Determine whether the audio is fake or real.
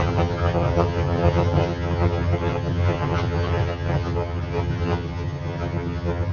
fake